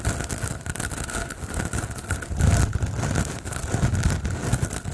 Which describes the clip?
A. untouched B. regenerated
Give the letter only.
A